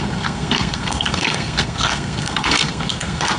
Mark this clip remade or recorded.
remade